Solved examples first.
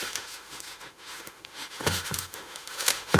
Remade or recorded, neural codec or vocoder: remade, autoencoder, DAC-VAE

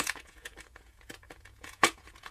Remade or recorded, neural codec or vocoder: remade, vocoder, Vocos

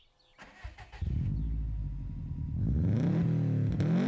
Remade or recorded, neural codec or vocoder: recorded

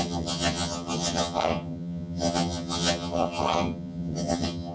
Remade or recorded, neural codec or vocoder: remade, vocoder, HiFi-GAN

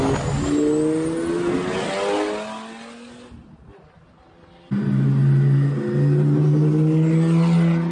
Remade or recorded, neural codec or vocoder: recorded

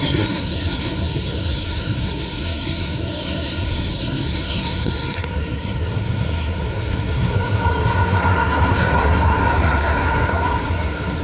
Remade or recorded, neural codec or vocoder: remade, codec, SNAC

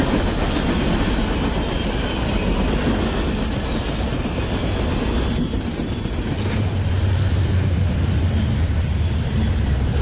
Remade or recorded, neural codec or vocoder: recorded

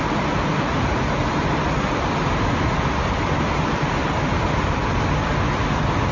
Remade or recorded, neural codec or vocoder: recorded